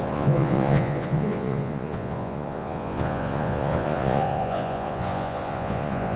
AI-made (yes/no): yes